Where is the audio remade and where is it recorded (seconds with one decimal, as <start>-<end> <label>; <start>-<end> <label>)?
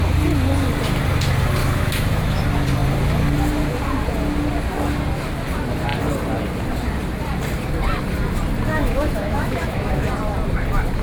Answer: 0.0-1.6 recorded; 1.6-2.4 remade; 2.4-8.7 recorded; 8.7-10.1 remade; 10.1-11.0 recorded